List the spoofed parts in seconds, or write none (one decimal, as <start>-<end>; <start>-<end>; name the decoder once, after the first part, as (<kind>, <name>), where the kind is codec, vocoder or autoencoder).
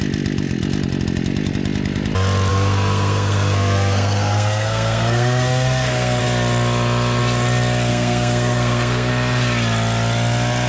2.5-6.2 (codec, SNAC); 7.9-9.1